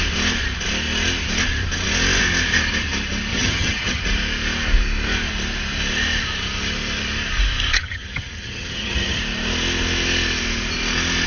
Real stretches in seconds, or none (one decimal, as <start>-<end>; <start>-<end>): 0.0-3.3; 4.0-7.7; 9.2-11.3